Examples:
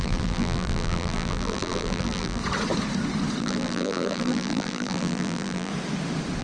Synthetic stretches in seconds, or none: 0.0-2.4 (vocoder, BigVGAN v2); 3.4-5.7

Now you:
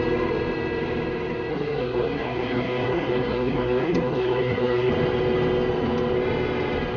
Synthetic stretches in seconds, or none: 1.5-4.9 (codec, SNAC)

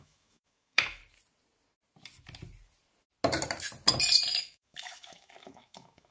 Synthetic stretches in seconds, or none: 0.0-1.0 (autoencoder, DAC-VAE); 4.4-6.1

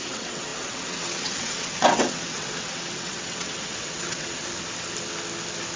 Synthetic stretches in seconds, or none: 0.0-4.4 (vocoder, WaveNeXt)

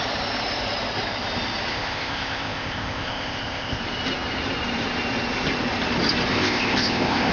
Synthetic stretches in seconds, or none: 1.7-3.8 (codec, ZipCodec); 6.3-7.3

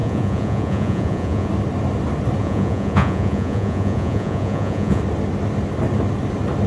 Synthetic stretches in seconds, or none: 0.0-1.5 (vocoder, Vocos); 2.4-5.0

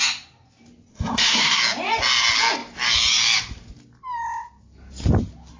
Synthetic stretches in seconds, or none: 0.9-1.6 (codec, SNAC)

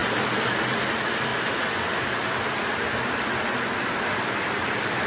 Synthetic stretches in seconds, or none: 0.0-1.3 (vocoder, BigVGAN v2); 3.9-5.1